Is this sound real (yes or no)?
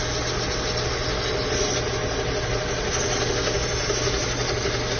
yes